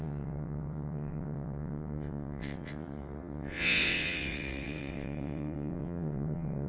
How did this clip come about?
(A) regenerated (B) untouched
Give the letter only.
A